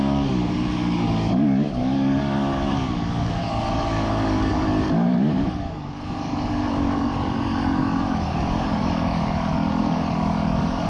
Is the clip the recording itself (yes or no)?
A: no